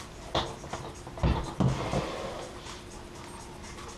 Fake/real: real